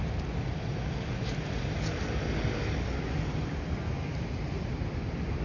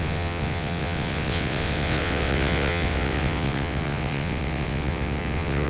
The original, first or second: first